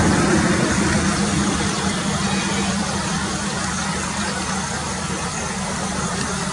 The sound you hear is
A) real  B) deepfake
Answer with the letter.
B